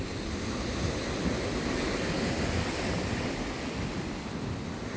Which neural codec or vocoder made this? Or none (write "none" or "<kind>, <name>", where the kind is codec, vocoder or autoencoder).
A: none